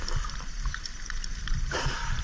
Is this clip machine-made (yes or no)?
yes